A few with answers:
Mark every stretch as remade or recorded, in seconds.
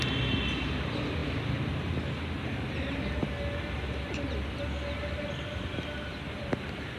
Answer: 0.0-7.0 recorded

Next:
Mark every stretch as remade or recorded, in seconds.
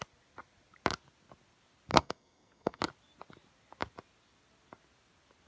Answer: 0.0-1.9 recorded; 1.9-2.8 remade; 2.8-5.5 recorded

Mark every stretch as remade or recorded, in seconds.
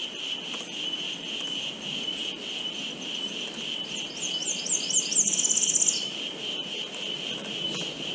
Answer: 0.0-8.1 recorded